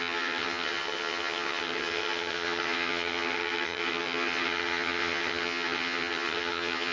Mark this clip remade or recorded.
remade